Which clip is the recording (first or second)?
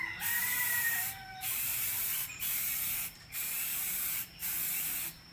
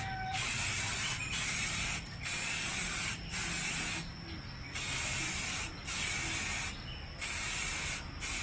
second